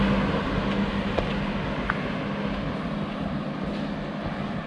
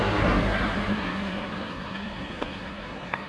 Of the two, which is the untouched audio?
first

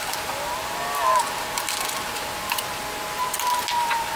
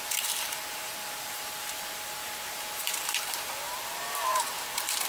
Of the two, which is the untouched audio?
first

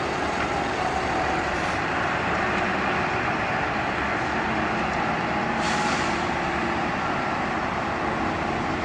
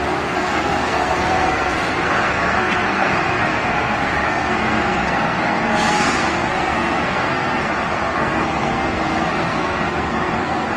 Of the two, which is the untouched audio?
first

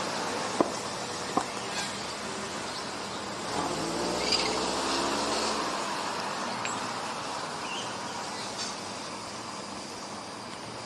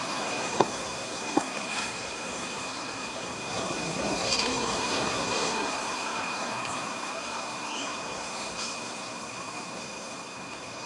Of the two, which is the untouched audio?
first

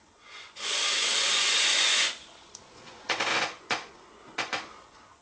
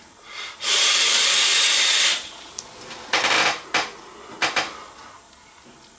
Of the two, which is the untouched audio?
second